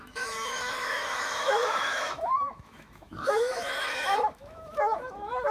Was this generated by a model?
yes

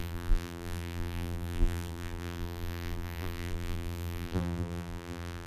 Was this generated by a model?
yes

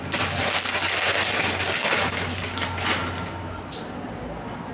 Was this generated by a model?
no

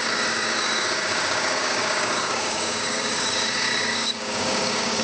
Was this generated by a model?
yes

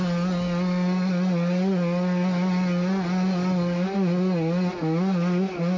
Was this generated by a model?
no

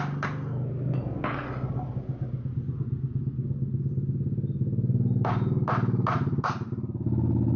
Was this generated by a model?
no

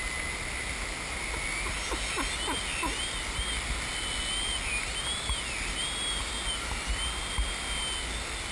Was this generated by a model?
no